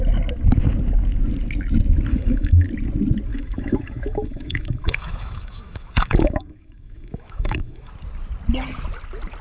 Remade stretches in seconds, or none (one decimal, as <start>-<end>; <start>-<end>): 2.1-2.7; 3.3-7.9